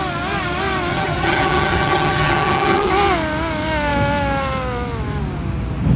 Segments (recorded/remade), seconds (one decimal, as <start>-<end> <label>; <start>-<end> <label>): 0.0-0.9 recorded; 0.9-2.9 remade; 2.9-6.0 recorded